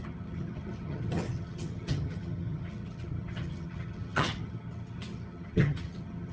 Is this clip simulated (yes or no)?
yes